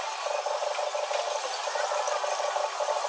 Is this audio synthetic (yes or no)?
no